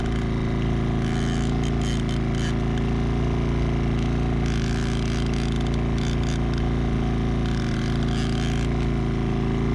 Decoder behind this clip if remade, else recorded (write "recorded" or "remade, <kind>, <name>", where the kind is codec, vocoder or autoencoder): recorded